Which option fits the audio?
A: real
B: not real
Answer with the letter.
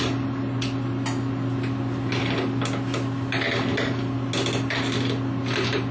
A